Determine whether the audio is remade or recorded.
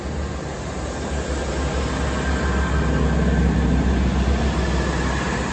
recorded